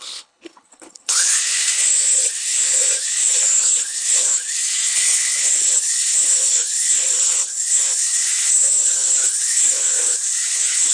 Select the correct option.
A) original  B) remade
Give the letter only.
B